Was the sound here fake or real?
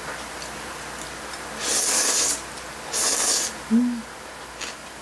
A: real